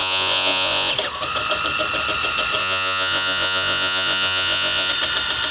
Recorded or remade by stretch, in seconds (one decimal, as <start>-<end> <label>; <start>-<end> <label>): 0.0-0.9 remade; 0.9-2.6 recorded; 2.6-4.9 remade; 4.9-5.5 recorded